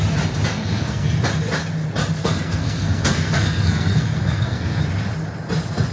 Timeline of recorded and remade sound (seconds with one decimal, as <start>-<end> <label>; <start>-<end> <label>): 0.0-0.5 recorded; 0.5-1.1 remade; 1.1-2.2 recorded; 2.2-4.8 remade; 4.8-5.9 recorded